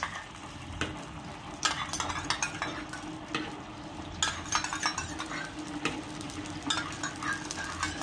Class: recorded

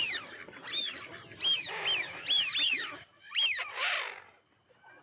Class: recorded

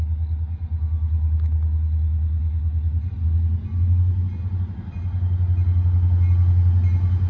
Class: recorded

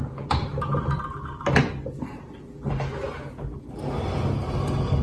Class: recorded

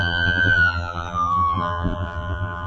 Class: remade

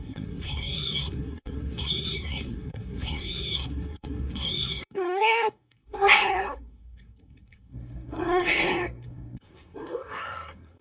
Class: remade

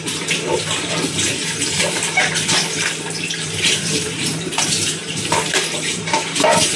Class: remade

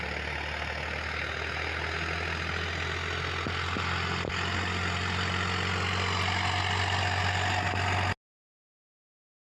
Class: recorded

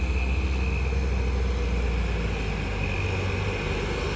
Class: recorded